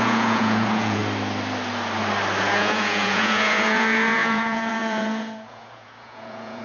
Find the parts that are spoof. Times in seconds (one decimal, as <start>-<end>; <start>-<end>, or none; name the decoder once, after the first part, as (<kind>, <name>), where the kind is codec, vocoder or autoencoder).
0.0-1.0 (vocoder, Vocos); 2.4-6.6